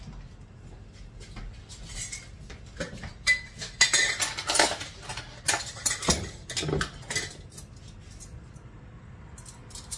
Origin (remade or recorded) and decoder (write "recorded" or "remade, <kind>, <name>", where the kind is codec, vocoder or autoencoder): recorded